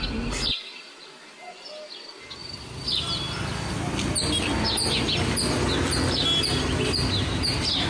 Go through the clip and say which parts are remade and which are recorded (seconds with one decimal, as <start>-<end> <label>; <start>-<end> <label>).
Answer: 0.0-2.4 recorded; 2.4-3.2 remade; 3.2-7.9 recorded